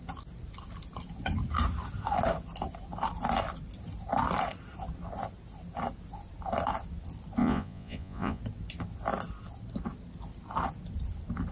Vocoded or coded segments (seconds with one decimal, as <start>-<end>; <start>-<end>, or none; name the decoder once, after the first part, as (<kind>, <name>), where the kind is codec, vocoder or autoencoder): 7.4-8.4 (vocoder, Vocos)